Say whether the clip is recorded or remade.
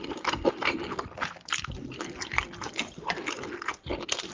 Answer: recorded